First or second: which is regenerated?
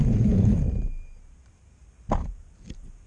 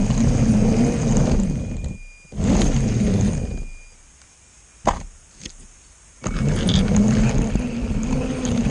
first